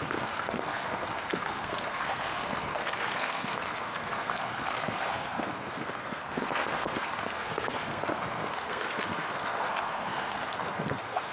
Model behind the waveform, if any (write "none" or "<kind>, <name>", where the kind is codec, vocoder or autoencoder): codec, SNAC